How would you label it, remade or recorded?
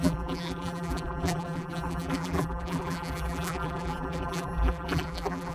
remade